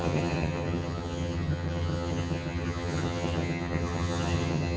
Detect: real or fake fake